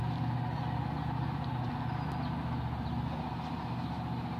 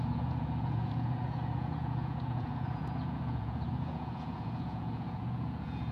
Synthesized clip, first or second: second